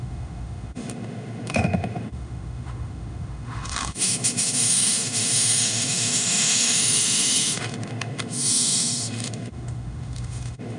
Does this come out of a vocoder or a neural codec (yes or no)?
yes